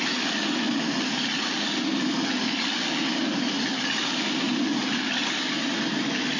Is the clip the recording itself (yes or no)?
yes